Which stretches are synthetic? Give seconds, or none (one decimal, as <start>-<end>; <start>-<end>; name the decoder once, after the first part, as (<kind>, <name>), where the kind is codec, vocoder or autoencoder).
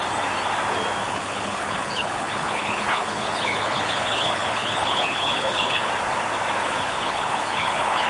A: 1.0-5.9 (codec, HILCodec); 6.6-8.1